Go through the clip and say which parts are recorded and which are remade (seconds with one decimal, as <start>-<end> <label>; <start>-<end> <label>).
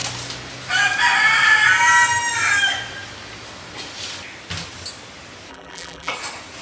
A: 0.0-5.5 recorded; 5.5-6.1 remade; 6.1-6.6 recorded